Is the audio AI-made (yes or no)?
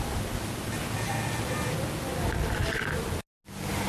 no